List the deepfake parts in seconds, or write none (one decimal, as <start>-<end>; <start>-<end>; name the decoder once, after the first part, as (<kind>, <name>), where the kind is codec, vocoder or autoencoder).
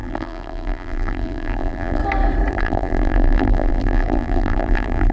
0.0-2.0 (vocoder, BigVGAN v2); 2.5-5.1